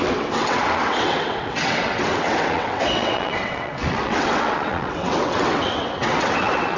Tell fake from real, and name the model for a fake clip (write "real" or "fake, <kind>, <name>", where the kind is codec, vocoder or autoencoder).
fake, vocoder, WaveNeXt